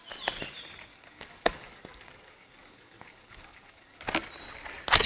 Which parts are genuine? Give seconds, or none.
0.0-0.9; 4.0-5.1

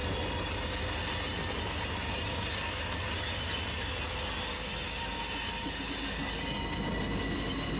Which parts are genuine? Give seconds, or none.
0.0-7.8